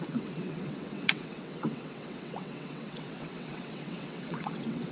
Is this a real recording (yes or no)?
no